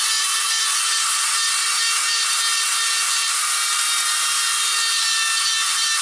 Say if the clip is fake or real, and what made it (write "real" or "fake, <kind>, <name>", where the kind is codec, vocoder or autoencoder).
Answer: real